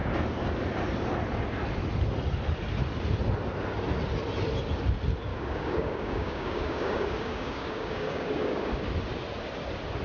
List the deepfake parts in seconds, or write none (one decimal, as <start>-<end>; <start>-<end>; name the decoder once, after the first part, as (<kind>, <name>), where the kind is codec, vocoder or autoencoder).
5.3-8.7 (codec, DAC)